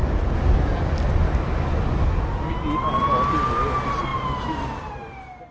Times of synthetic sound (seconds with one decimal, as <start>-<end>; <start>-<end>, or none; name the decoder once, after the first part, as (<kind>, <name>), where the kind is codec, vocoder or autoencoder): none